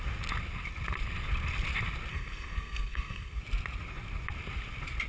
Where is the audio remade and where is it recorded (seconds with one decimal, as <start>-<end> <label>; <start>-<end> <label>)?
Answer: 0.0-2.1 recorded; 2.1-3.4 remade; 3.4-5.1 recorded